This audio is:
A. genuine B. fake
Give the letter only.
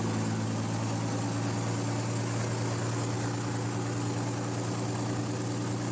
A